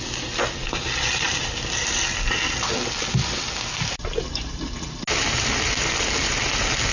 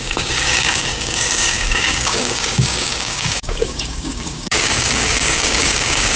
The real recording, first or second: first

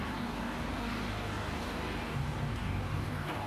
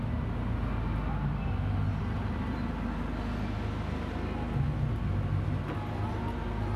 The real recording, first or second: second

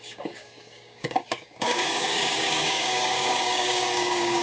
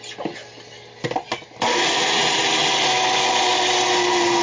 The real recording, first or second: second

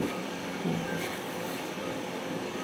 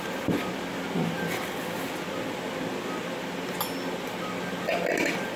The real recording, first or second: second